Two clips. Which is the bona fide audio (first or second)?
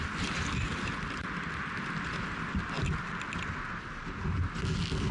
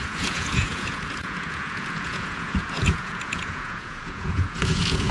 first